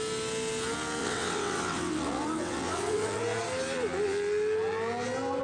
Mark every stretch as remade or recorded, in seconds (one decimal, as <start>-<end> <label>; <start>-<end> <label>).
0.0-1.0 recorded; 1.0-3.2 remade; 3.2-5.4 recorded